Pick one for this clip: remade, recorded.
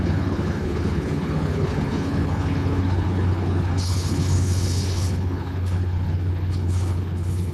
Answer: remade